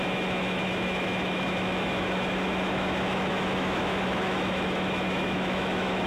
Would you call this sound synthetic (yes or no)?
yes